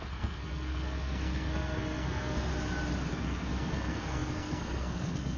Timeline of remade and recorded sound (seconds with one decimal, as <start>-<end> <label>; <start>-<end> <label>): 0.0-2.5 remade; 2.5-3.1 recorded; 3.1-5.4 remade